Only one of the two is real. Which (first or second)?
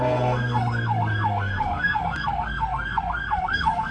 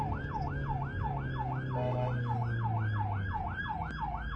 second